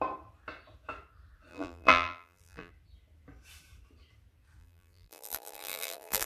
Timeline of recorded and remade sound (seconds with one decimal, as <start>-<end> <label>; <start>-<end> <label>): 0.0-1.5 recorded; 1.5-2.7 remade; 2.7-4.6 recorded; 4.6-6.3 remade